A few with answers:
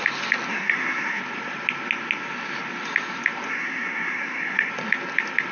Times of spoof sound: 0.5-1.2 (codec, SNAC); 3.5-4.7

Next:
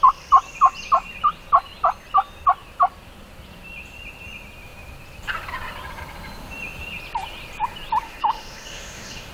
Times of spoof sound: 8.0-9.3 (autoencoder, DAC-VAE)